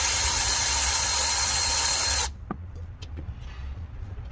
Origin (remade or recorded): remade